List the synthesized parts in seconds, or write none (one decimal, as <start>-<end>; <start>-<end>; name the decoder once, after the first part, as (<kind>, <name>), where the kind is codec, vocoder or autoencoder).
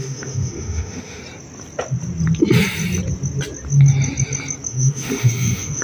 0.0-1.2 (autoencoder, DAC-VAE); 4.7-5.8